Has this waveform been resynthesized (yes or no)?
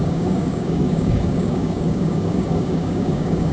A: yes